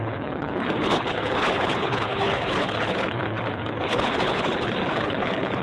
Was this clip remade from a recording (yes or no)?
yes